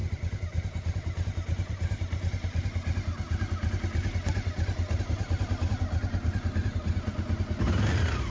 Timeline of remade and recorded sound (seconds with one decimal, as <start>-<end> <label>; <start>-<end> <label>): 0.0-8.3 recorded